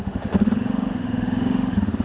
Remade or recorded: remade